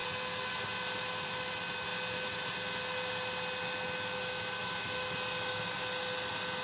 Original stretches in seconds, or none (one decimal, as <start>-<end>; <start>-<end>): 0.0-6.6